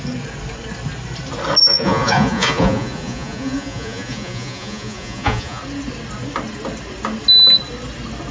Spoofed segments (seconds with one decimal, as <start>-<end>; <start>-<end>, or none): 1.7-5.6